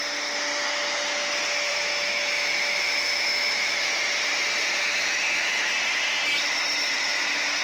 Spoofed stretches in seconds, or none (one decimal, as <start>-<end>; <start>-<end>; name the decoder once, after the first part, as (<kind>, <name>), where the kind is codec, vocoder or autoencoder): 1.7-3.9 (autoencoder, DAC-VAE); 4.8-5.7